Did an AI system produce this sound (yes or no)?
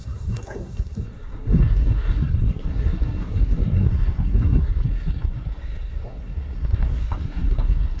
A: yes